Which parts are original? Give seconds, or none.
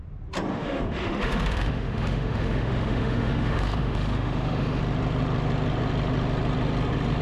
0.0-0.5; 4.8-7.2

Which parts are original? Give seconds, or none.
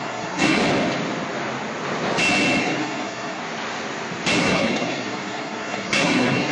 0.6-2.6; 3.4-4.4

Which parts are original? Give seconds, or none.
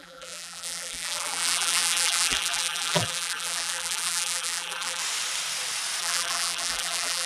5.0-6.0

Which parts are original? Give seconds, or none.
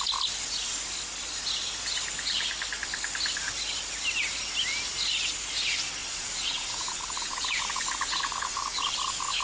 0.0-6.0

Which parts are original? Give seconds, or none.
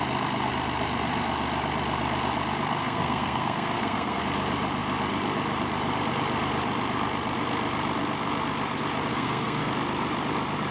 0.0-2.8; 4.2-9.1; 9.7-10.7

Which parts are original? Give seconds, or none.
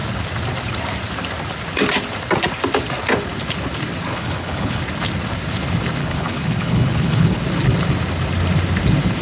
0.0-4.1; 4.8-6.0; 7.4-9.2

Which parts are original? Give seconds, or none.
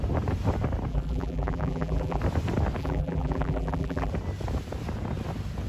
0.0-0.9; 2.2-2.8; 4.1-5.7